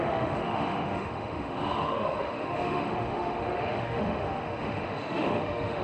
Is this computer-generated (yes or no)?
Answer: yes